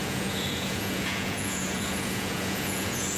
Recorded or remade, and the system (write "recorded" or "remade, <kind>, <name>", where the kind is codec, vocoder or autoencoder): remade, vocoder, Vocos